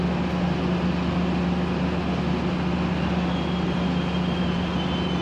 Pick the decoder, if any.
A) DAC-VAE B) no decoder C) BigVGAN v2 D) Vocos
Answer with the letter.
B